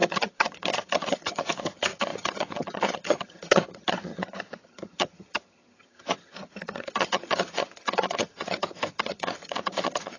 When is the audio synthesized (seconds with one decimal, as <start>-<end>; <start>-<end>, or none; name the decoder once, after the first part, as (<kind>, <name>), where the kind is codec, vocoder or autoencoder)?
0.0-10.2 (vocoder, HiFi-GAN)